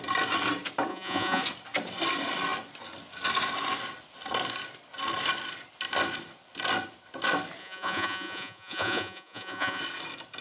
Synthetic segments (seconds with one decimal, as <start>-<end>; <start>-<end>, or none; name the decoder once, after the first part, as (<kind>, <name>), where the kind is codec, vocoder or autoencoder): 0.9-1.4 (vocoder, Vocos); 7.6-9.8